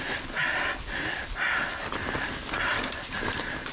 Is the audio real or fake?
real